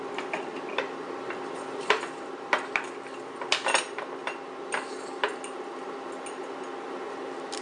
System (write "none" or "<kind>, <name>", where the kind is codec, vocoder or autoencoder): none